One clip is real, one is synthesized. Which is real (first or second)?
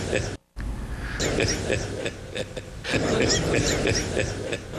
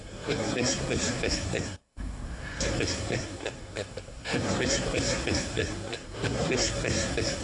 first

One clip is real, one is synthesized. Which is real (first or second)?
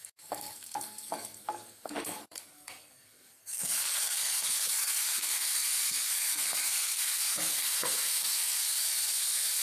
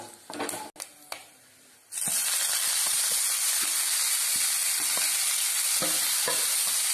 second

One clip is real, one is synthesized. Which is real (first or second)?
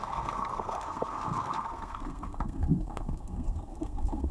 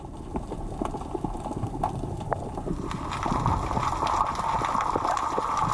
second